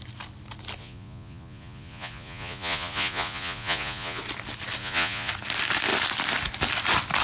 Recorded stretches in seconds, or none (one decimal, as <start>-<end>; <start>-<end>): 0.0-0.8; 4.2-4.8; 5.3-7.2

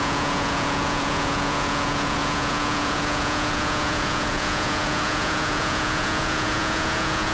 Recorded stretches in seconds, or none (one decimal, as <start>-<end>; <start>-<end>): none